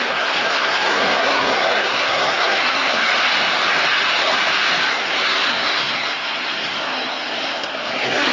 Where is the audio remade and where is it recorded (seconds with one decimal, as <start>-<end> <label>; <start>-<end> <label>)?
0.0-3.1 remade; 3.1-4.9 recorded; 4.9-8.3 remade